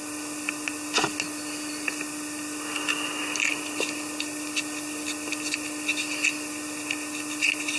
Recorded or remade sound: recorded